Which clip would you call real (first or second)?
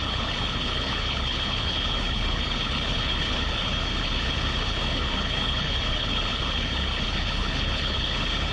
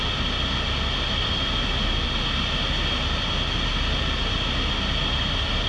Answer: second